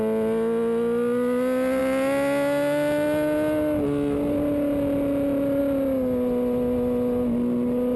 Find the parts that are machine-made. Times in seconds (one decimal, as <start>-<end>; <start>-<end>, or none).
none